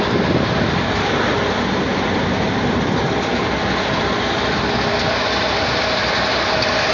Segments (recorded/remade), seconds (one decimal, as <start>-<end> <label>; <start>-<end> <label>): 0.0-6.9 recorded